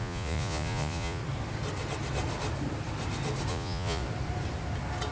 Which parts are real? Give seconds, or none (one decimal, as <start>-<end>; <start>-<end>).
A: 1.2-3.5; 4.0-5.1